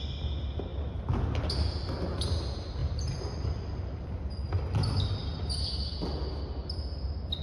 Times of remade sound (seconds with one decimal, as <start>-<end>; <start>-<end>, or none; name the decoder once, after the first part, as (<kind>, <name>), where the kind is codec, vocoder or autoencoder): 2.8-4.2 (vocoder, BigVGAN v2); 5.2-5.9